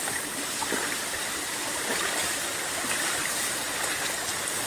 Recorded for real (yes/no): yes